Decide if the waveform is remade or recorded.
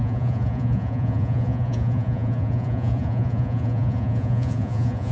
remade